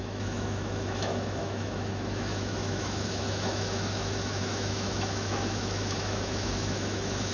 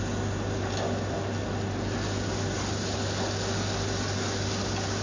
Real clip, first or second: second